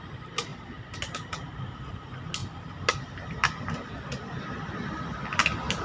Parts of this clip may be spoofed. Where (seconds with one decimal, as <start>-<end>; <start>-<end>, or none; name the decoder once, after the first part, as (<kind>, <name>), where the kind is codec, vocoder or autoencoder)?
none